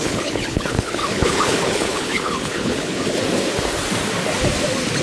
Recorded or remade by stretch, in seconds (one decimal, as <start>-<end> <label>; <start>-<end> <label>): 0.0-3.0 remade; 3.0-5.0 recorded

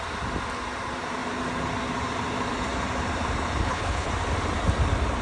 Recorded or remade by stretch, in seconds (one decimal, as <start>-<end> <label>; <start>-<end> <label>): 0.0-3.6 recorded; 3.6-4.1 remade; 4.1-5.2 recorded